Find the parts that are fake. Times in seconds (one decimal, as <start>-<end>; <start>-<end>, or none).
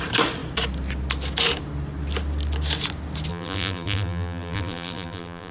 3.3-5.5